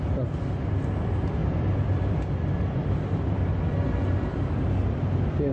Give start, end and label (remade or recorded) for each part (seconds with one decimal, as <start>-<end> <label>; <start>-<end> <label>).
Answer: 0.0-5.5 recorded